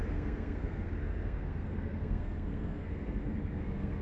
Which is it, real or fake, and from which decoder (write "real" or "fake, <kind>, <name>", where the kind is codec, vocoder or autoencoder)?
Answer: fake, codec, SNAC